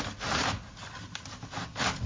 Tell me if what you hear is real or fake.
real